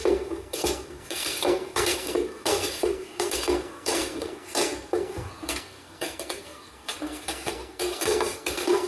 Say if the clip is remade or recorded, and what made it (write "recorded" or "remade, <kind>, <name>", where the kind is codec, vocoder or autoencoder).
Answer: remade, codec, SNAC